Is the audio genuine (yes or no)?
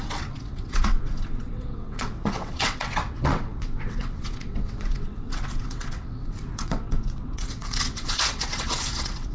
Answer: no